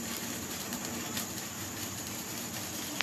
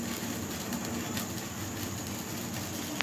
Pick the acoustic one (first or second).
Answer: second